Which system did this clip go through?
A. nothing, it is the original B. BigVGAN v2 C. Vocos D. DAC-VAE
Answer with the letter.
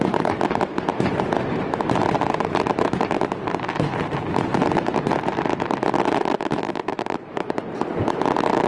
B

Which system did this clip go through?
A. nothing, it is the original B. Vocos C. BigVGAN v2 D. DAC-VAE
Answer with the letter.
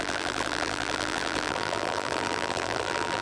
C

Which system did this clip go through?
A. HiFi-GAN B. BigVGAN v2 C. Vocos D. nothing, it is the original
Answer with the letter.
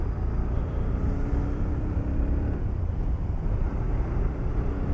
D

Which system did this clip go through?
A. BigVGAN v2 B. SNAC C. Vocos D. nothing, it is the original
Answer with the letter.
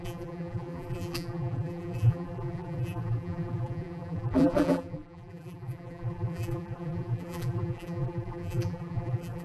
A